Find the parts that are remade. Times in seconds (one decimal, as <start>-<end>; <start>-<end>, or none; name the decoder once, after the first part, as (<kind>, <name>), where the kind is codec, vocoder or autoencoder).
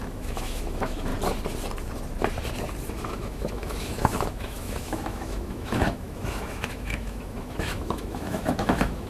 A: 0.0-1.1 (autoencoder, DAC-VAE); 2.9-9.1